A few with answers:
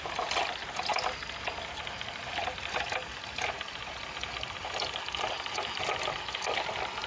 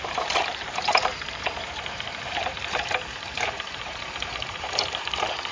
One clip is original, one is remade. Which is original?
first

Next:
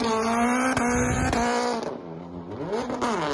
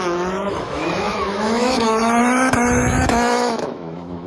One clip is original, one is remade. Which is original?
first